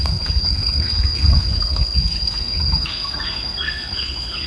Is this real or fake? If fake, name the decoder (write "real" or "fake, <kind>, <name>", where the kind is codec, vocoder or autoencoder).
fake, codec, SNAC